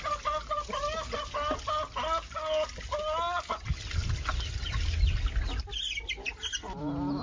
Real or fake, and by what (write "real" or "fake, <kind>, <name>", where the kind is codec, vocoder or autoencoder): real